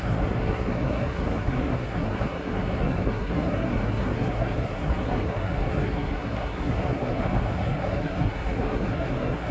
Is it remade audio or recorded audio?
remade